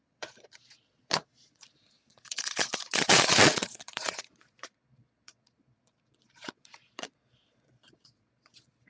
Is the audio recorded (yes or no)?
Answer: no